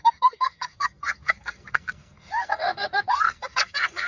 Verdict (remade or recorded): remade